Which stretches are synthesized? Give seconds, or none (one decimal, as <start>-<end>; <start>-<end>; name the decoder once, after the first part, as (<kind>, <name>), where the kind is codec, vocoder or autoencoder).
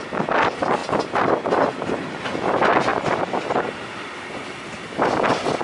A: none